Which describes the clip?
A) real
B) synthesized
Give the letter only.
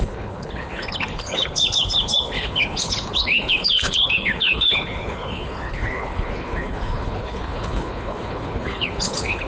B